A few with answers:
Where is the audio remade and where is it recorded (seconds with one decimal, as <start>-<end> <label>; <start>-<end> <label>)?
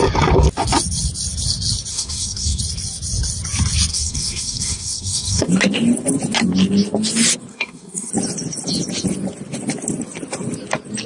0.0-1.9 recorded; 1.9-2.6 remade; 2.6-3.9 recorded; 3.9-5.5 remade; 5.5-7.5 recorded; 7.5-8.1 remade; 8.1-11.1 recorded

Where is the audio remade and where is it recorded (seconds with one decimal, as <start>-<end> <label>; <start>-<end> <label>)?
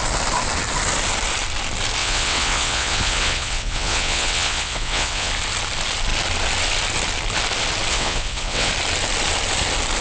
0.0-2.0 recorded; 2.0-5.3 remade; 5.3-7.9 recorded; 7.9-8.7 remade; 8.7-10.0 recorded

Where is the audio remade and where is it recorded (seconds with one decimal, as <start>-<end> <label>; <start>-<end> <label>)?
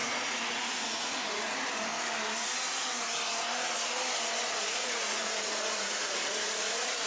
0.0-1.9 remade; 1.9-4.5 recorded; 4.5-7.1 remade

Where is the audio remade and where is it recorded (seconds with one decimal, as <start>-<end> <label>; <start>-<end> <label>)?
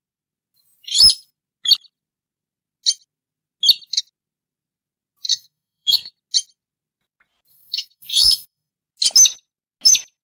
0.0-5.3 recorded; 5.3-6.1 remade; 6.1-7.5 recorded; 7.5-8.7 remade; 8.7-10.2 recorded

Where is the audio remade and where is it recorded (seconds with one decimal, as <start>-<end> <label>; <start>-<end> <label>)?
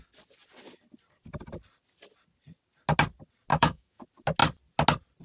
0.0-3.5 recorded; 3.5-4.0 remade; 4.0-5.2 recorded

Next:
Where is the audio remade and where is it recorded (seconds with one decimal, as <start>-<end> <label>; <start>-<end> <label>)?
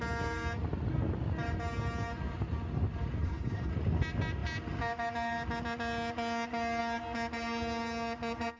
0.0-3.2 recorded; 3.2-3.7 remade; 3.7-8.6 recorded